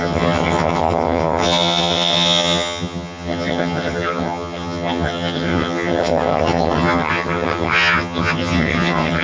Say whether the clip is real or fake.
fake